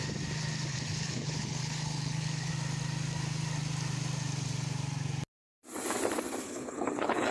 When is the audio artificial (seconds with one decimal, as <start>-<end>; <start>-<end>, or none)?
0.7-2.5; 6.4-7.3